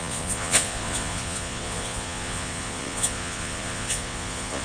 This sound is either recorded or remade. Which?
remade